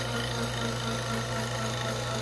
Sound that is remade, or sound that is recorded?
recorded